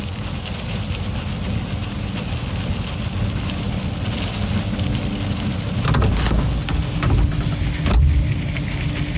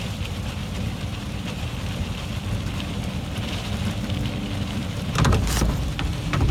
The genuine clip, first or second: first